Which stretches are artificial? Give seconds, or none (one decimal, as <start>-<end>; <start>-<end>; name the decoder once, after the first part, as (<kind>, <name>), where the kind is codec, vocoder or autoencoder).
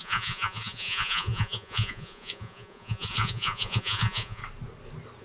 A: 0.0-4.4 (vocoder, Vocos)